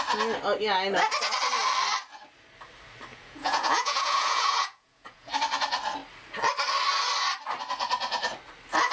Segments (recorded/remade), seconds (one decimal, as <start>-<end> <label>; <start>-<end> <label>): 0.0-3.1 recorded; 3.1-5.3 remade; 5.3-8.9 recorded